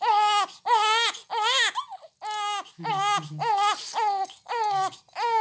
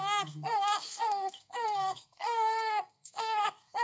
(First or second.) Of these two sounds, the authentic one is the first